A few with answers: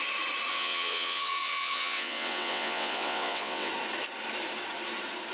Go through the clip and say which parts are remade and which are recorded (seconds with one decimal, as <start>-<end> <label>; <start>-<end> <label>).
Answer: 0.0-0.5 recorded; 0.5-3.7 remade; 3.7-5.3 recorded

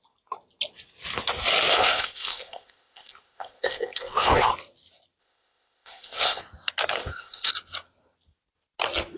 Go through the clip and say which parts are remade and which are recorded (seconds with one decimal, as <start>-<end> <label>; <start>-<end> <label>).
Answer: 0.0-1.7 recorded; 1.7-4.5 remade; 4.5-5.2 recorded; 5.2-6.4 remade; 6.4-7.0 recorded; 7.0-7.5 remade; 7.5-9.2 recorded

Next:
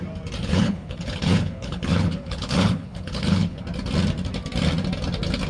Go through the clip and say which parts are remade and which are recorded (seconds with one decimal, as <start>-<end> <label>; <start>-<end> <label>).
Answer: 0.0-0.4 recorded; 0.4-3.6 remade; 3.6-5.5 recorded